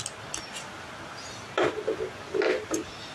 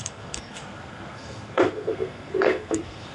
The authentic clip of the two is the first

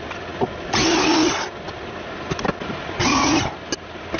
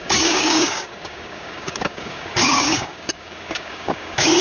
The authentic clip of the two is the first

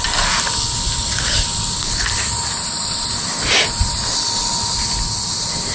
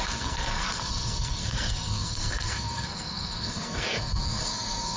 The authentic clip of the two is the first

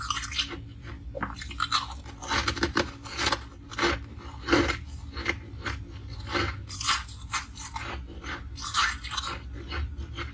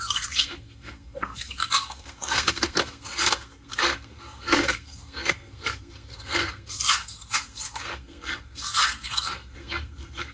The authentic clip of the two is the first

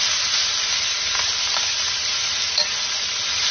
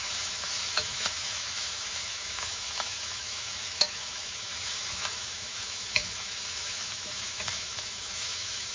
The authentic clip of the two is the first